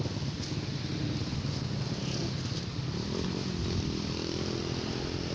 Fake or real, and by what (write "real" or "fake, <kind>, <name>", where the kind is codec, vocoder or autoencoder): real